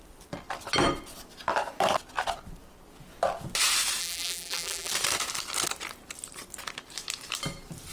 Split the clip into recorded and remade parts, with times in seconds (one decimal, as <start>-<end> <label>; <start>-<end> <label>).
0.0-4.0 recorded; 4.0-4.9 remade; 4.9-7.9 recorded